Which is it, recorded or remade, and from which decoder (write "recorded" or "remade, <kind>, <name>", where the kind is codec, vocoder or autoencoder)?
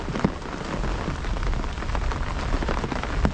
recorded